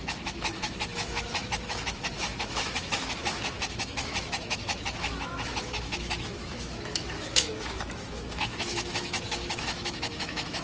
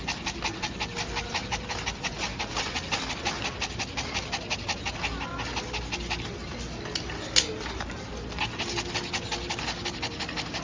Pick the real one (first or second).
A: second